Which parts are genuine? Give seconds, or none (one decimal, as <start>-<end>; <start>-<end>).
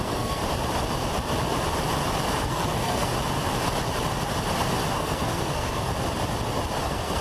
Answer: 0.4-2.4; 3.1-4.9; 5.9-6.8